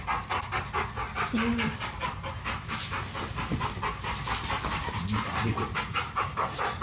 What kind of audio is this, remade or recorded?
recorded